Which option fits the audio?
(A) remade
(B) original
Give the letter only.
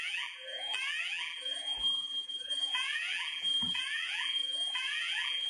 A